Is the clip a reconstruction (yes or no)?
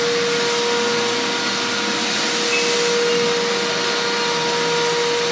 no